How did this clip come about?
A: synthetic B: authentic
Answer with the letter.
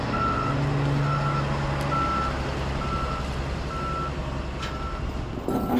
B